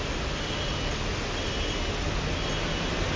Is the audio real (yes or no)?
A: yes